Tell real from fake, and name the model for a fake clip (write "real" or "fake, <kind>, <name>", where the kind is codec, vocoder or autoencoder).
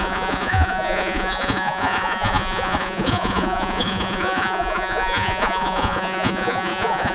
fake, vocoder, Vocos